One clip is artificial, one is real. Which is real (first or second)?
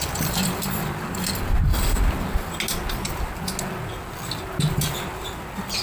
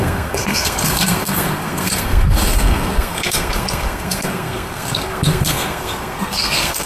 first